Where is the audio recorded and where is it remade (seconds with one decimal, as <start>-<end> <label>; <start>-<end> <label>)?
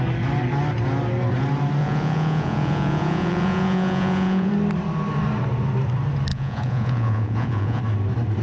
0.0-1.8 recorded; 1.8-4.5 remade; 4.5-6.3 recorded; 6.3-7.8 remade; 7.8-8.4 recorded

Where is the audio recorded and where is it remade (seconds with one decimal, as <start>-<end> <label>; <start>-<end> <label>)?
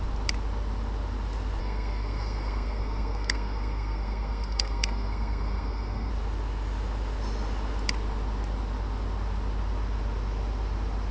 0.0-1.6 recorded; 1.6-6.1 remade; 6.1-11.1 recorded